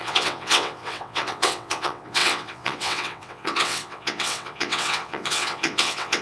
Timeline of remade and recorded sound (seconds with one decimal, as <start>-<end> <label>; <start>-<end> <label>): 0.0-6.2 remade